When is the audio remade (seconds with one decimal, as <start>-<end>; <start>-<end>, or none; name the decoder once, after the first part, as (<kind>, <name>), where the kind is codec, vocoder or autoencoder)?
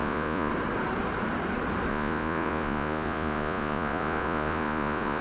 0.0-0.5 (vocoder, Vocos); 1.9-5.2